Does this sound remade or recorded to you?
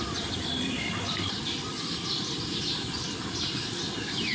remade